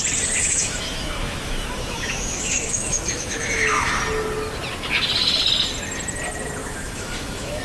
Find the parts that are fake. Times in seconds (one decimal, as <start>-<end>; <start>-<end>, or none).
0.4-4.0; 6.6-7.6